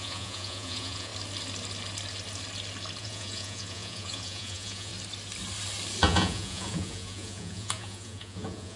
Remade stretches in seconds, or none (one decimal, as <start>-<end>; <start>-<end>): 0.0-1.1; 3.0-4.9; 6.0-8.8